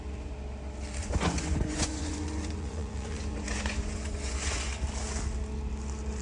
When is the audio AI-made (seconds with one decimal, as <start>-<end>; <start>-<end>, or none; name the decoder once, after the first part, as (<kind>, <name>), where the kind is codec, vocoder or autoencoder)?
1.0-4.7 (vocoder, Vocos)